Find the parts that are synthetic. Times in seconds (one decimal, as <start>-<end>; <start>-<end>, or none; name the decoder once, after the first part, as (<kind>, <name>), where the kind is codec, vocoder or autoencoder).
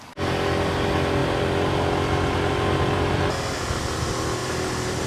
1.2-3.2 (vocoder, BigVGAN v2); 4.4-5.1